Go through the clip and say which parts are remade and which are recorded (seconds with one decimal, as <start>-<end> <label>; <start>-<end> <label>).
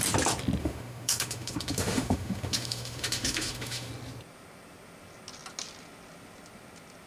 0.0-0.6 recorded; 0.6-3.9 remade; 3.9-7.1 recorded